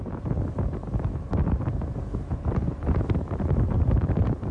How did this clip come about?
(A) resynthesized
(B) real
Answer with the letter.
A